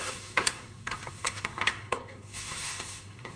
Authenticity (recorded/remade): remade